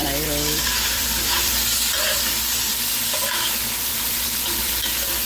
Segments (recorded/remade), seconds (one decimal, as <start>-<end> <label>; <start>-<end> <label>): 0.0-3.2 remade; 3.2-3.9 recorded; 3.9-4.7 remade; 4.7-5.3 recorded